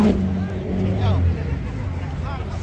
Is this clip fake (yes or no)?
no